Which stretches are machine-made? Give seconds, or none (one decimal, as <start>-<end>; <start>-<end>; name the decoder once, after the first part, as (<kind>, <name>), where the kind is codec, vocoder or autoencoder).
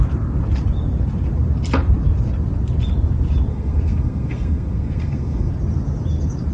3.5-5.5 (codec, SNAC)